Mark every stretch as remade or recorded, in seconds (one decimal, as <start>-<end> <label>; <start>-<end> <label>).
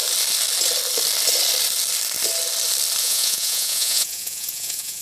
0.0-3.0 recorded; 3.0-5.0 remade